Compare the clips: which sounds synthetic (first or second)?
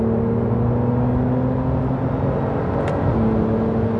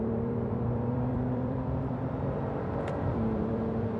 second